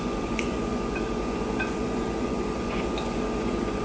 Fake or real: fake